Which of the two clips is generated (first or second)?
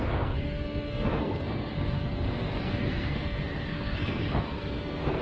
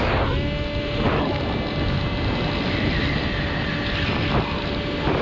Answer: first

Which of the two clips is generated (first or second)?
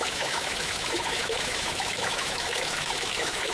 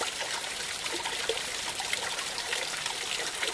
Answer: first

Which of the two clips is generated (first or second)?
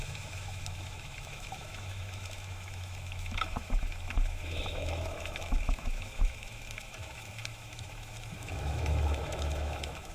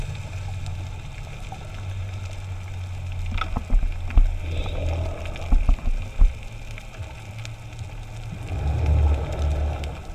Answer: first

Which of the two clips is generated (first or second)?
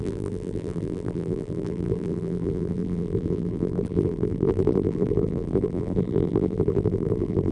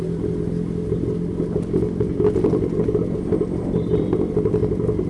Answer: first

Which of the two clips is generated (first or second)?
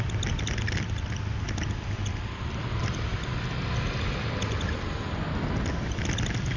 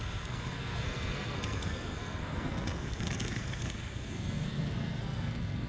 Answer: second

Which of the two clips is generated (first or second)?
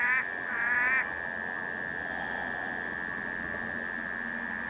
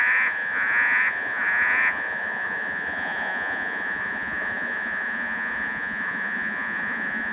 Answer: second